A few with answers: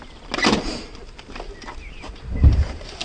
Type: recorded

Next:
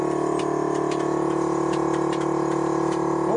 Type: recorded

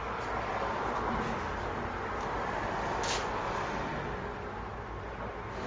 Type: recorded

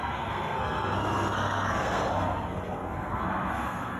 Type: remade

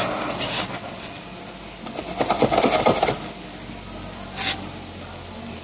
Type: recorded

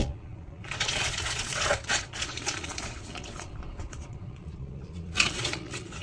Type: remade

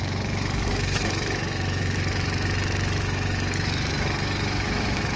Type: remade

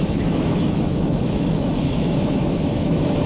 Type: remade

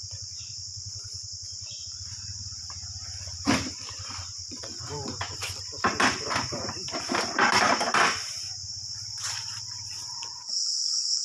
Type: remade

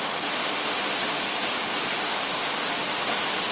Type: recorded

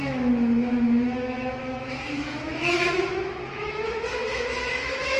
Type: remade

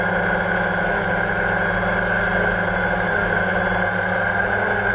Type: recorded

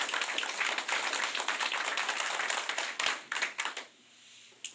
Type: recorded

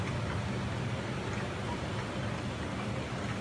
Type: recorded